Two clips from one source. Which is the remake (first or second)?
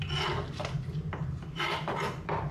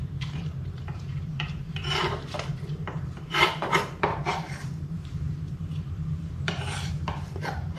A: second